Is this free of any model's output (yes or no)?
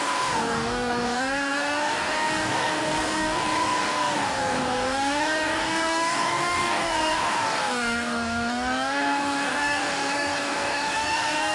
no